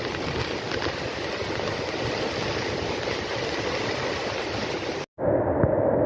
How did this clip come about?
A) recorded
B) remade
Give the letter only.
A